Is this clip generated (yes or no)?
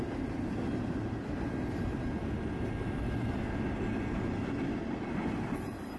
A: no